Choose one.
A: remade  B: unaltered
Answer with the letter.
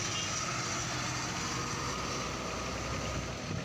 B